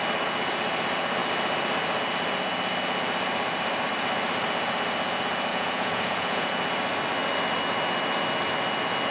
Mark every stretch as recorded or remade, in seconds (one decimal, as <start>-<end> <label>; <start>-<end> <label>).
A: 0.0-5.5 recorded; 5.5-6.5 remade; 6.5-9.1 recorded